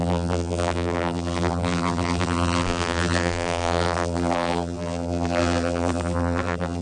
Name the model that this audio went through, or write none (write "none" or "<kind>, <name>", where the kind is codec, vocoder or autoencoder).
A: vocoder, BigVGAN v2